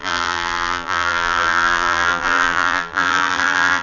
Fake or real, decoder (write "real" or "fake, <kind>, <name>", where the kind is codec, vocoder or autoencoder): fake, vocoder, BigVGAN v2